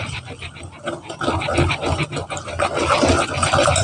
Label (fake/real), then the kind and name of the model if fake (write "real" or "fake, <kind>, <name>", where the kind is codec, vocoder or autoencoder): real